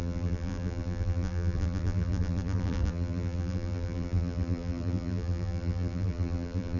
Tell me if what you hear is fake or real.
fake